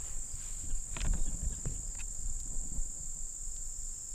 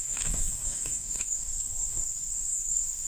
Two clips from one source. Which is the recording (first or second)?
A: first